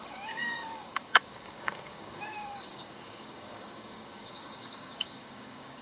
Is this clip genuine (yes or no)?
no